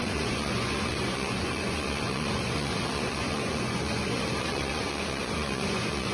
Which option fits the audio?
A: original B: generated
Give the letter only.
B